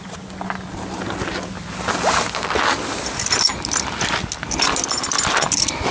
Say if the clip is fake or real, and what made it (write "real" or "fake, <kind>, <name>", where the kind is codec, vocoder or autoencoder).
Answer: real